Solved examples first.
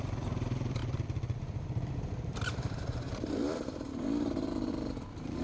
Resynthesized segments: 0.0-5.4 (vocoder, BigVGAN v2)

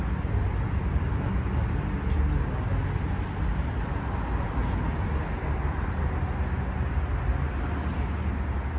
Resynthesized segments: none

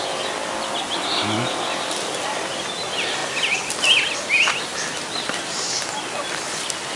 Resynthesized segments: 3.2-4.3 (vocoder, BigVGAN v2); 4.7-5.7

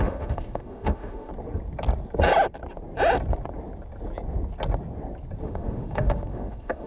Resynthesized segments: 0.0-1.3 (autoencoder, DAC-VAE); 5.4-6.9

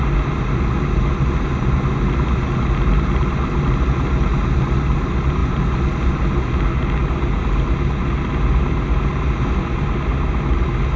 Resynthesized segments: none

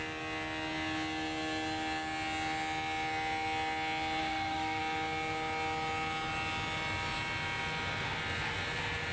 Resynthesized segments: 4.2-4.8 (codec, SNAC)

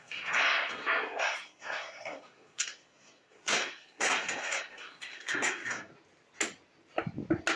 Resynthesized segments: 0.0-5.9 (codec, SNAC)